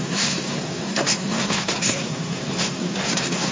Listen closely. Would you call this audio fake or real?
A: fake